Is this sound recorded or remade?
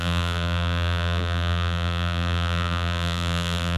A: remade